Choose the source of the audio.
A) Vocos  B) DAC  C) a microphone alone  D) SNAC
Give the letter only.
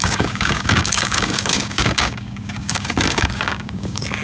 B